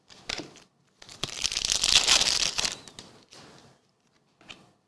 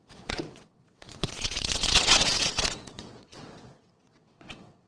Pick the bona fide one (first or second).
first